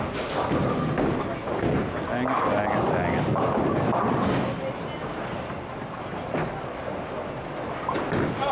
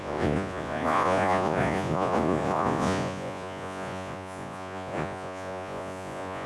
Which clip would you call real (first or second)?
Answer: first